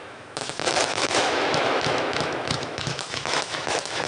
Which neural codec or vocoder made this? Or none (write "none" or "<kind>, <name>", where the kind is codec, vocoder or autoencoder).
autoencoder, DAC-VAE